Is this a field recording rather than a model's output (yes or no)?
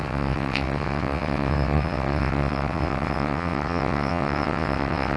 no